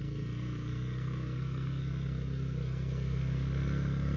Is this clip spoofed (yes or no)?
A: yes